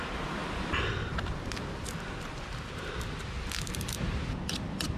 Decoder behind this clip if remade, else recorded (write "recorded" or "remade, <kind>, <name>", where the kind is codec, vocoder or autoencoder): recorded